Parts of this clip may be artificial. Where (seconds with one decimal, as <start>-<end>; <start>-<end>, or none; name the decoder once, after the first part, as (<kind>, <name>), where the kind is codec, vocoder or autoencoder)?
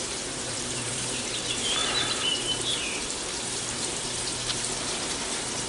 0.0-5.7 (vocoder, BigVGAN v2)